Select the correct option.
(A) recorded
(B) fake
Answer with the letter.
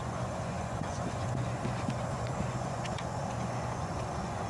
B